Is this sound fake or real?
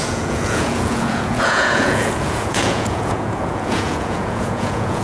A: fake